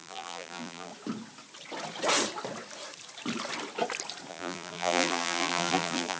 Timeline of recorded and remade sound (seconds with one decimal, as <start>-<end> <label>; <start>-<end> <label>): 0.0-0.9 remade; 0.9-4.3 recorded; 4.3-6.2 remade